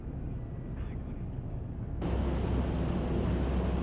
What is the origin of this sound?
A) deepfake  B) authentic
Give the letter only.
B